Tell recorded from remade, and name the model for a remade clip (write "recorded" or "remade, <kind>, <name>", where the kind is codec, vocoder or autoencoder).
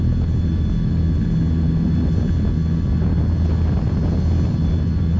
recorded